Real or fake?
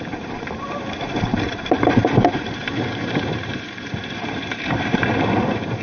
fake